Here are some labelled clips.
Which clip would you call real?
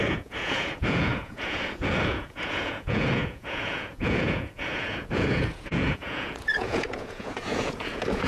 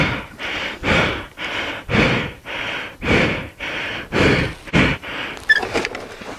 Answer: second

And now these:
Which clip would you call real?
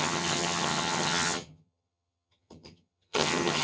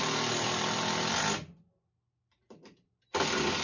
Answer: second